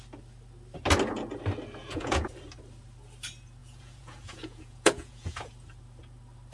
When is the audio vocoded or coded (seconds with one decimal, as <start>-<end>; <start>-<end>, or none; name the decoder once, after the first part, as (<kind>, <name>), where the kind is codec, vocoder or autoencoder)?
1.8-2.4 (vocoder, Vocos); 3.6-5.5